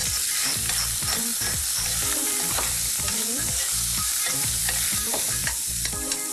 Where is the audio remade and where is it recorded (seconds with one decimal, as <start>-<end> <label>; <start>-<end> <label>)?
0.0-5.4 remade; 5.4-6.3 recorded